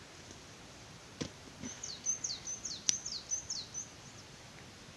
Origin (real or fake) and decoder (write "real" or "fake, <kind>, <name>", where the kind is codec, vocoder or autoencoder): real